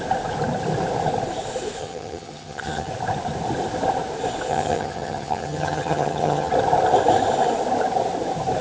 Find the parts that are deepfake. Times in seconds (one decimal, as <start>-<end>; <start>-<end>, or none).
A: 1.8-2.9; 4.5-6.5